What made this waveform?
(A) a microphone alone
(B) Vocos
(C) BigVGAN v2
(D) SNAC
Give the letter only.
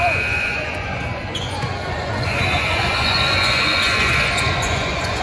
B